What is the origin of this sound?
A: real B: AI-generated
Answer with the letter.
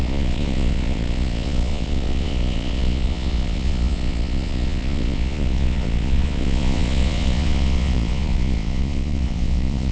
B